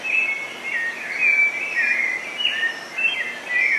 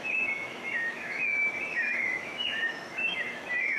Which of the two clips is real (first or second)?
first